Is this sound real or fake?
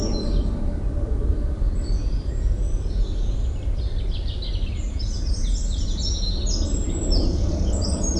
real